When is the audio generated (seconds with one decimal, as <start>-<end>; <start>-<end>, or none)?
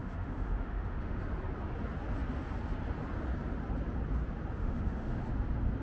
0.0-1.2; 4.6-5.2